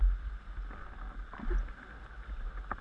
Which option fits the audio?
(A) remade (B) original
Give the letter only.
B